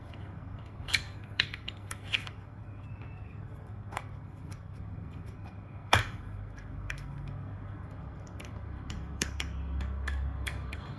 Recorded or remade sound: remade